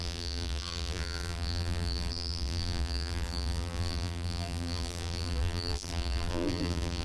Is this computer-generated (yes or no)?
yes